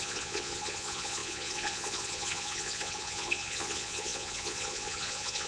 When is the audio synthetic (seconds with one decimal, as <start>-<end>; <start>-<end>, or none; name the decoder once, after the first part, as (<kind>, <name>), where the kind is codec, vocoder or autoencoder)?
0.0-5.5 (vocoder, Vocos)